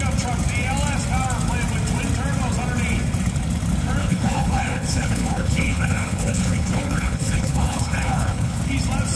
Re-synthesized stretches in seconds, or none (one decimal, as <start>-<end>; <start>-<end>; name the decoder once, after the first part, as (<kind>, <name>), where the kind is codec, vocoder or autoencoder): 4.0-8.6 (codec, HILCodec)